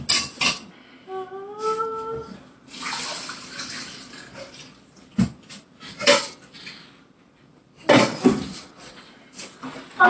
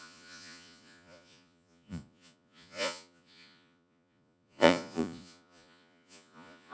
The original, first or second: first